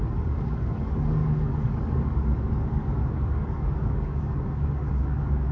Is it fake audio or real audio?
fake